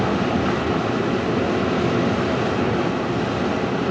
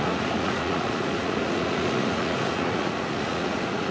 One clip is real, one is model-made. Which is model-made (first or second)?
second